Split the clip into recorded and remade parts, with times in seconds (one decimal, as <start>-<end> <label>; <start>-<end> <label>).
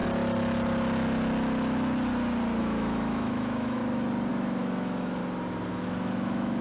0.0-2.6 recorded; 2.6-3.8 remade; 3.8-4.3 recorded; 4.3-5.2 remade; 5.2-5.7 recorded; 5.7-6.6 remade